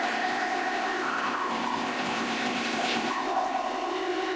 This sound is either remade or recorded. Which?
remade